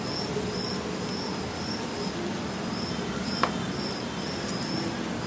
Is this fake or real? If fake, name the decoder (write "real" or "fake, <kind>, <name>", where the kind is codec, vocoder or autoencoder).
real